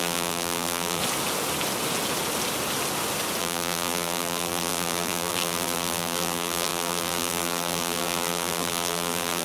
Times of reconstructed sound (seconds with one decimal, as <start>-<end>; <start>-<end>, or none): 0.0-1.0; 3.4-9.4